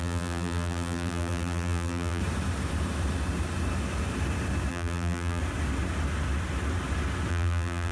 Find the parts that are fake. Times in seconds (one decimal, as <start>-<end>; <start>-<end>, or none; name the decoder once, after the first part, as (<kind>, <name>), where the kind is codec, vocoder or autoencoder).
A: 0.0-2.2 (vocoder, BigVGAN v2); 4.7-5.4; 7.3-7.9